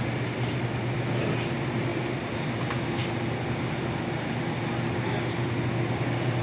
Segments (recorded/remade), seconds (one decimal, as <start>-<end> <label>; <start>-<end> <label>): 0.0-6.4 recorded